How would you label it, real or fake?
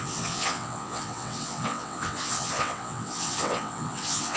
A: fake